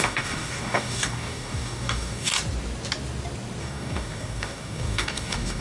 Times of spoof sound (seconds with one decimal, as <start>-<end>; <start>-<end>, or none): 0.0-2.3; 3.6-5.6

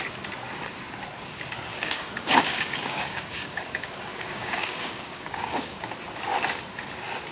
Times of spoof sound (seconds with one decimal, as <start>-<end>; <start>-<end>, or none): 1.7-5.9